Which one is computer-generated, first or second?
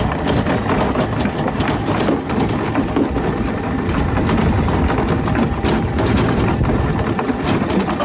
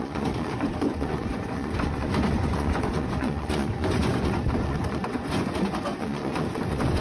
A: second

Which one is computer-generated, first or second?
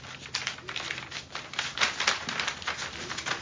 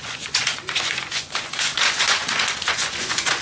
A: second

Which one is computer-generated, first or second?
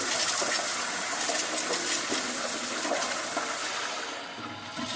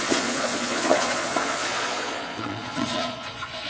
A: second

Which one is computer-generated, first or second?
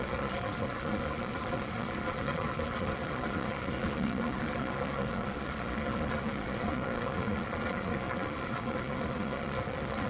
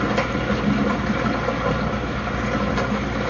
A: first